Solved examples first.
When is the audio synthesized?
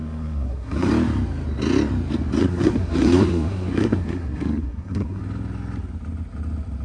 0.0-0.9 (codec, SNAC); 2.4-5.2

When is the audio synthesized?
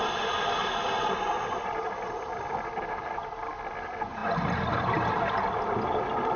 none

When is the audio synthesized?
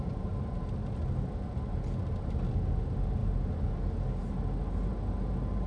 none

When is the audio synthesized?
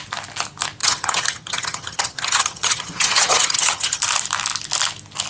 0.8-4.0 (vocoder, HiFi-GAN)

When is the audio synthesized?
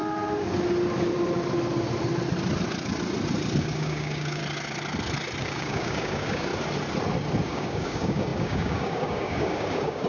3.6-4.4 (codec, DAC); 5.4-6.5; 7.5-10.1